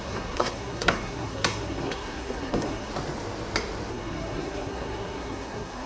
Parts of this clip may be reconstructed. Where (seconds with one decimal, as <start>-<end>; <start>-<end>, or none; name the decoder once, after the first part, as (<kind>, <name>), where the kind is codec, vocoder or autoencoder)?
0.0-2.9 (codec, SNAC); 3.9-5.9